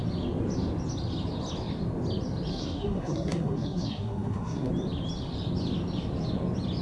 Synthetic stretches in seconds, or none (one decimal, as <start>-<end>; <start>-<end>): 2.5-4.7